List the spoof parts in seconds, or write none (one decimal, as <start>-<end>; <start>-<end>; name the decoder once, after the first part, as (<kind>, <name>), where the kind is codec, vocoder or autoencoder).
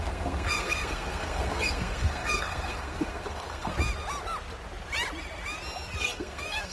0.0-3.7 (codec, SNAC); 6.0-6.7